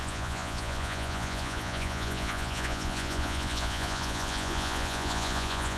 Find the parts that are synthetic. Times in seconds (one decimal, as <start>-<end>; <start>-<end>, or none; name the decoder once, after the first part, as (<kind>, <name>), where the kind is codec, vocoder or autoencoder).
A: 0.0-5.8 (vocoder, Vocos)